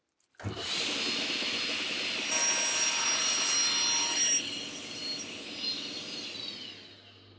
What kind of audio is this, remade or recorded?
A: recorded